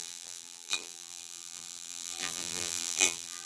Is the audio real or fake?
fake